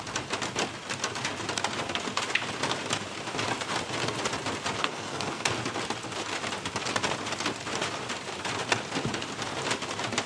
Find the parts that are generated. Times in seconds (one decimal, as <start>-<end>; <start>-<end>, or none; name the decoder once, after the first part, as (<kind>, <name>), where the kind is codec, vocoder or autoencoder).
4.8-5.5 (codec, SNAC)